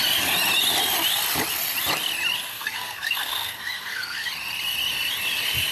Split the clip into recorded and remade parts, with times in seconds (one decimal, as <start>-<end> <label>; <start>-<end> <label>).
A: 0.0-2.5 recorded; 2.5-4.3 remade; 4.3-5.7 recorded